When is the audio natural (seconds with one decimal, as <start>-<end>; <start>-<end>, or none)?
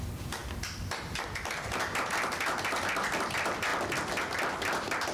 3.7-4.2